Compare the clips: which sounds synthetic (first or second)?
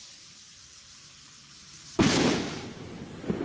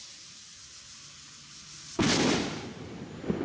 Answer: first